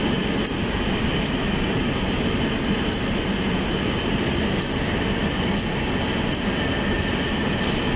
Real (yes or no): yes